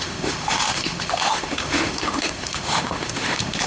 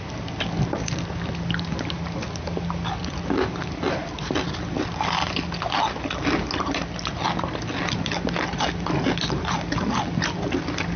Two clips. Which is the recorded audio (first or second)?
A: second